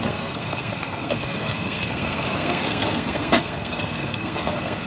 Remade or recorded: remade